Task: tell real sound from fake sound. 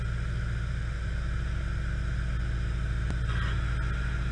real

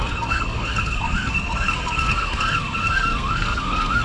fake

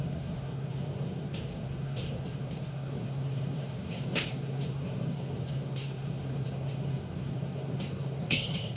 fake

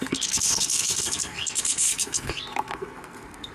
fake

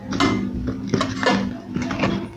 real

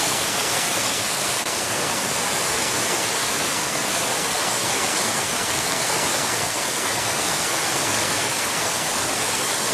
fake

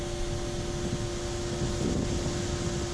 real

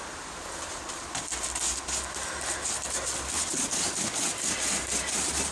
real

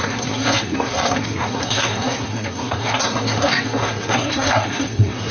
fake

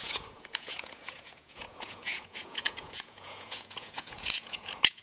fake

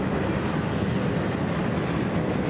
real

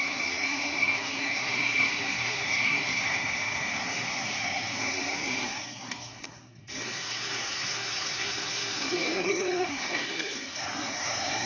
fake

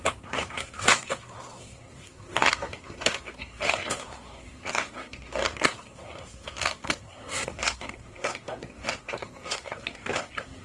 fake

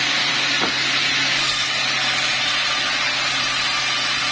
real